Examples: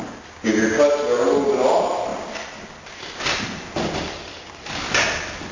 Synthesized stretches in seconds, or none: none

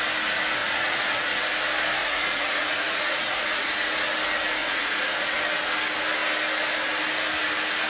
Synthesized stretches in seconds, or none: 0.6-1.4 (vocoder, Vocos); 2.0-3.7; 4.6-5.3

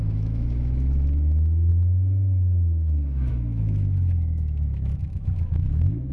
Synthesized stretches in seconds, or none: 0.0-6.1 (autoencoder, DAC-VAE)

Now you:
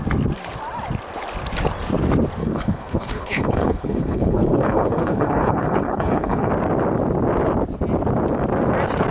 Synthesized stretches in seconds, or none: 2.4-6.5 (codec, HILCodec)

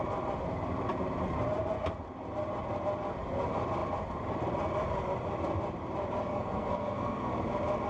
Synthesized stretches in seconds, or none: 6.3-7.3 (codec, SNAC)

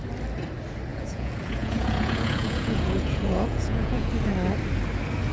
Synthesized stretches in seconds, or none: 0.9-4.1 (vocoder, Vocos)

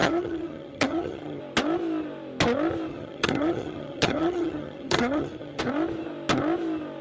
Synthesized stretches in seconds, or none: 0.0-1.4 (vocoder, HiFi-GAN); 2.9-5.6